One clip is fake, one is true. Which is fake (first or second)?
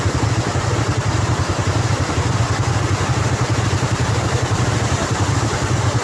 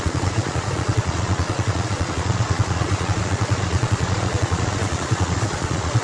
second